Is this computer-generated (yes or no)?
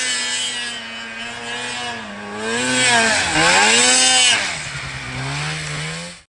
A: no